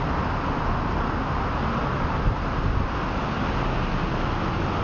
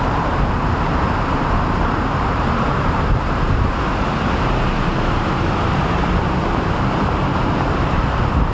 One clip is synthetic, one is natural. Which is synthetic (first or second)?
second